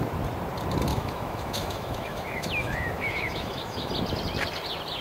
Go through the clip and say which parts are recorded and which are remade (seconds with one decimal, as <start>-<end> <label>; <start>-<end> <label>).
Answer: 0.0-0.9 recorded; 0.9-3.9 remade; 3.9-5.0 recorded